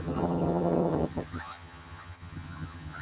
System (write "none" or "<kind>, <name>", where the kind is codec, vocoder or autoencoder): vocoder, HiFi-GAN